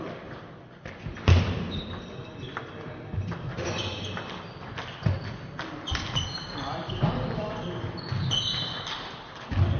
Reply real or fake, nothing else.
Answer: real